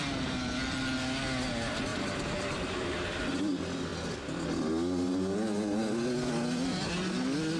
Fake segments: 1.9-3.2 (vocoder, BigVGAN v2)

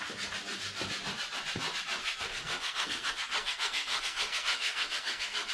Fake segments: 2.0-5.5 (codec, SNAC)